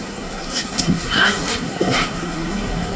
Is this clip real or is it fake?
fake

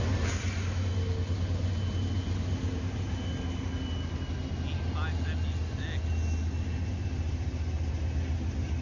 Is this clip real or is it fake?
real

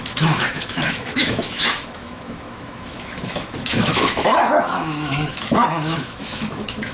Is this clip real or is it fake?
fake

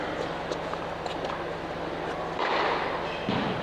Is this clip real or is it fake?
real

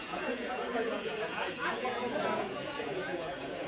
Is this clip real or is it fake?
fake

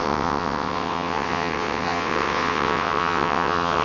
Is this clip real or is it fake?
fake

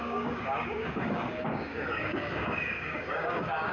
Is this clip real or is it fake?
fake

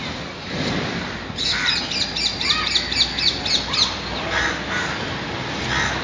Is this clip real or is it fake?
real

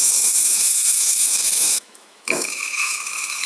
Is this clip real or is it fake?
fake